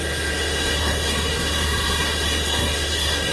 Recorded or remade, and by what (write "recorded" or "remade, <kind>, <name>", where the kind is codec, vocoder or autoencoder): remade, codec, SNAC